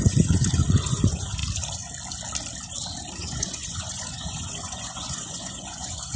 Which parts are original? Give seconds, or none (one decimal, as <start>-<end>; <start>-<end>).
1.4-3.2